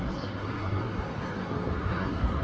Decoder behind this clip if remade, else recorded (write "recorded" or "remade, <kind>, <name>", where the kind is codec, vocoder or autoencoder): remade, codec, SNAC